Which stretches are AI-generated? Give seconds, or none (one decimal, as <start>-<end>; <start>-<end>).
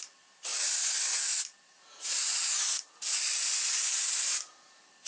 none